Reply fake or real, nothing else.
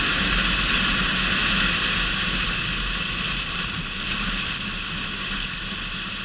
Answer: real